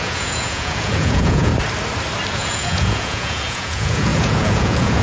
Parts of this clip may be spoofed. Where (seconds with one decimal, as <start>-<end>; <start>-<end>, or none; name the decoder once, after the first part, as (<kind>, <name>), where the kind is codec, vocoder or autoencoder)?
0.0-1.5 (vocoder, Vocos); 2.3-5.0